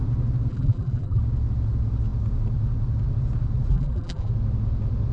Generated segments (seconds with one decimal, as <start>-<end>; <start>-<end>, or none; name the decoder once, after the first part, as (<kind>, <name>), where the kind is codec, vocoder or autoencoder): 0.5-1.2 (vocoder, BigVGAN v2); 3.7-4.3